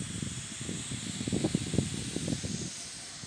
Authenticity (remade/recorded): recorded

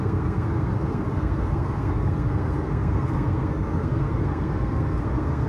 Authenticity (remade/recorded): remade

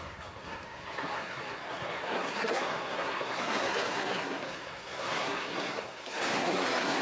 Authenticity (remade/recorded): remade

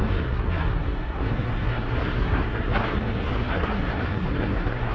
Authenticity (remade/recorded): remade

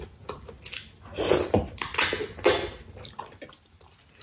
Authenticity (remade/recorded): recorded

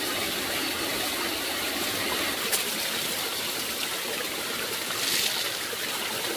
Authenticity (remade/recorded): recorded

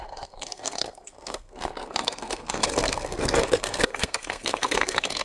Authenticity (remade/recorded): remade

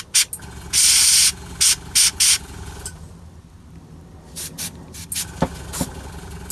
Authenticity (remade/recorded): recorded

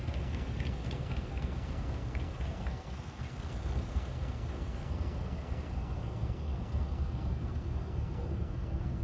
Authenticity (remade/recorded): remade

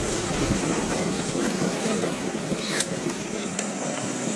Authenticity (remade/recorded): remade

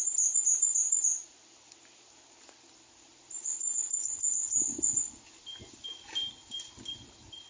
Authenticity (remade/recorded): recorded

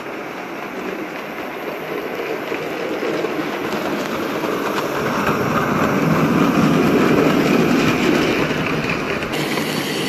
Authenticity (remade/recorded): recorded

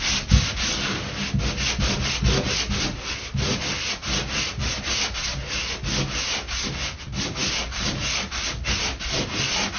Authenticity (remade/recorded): recorded